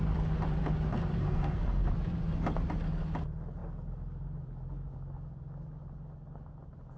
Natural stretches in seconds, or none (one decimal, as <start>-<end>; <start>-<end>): 0.0-1.2; 1.9-7.0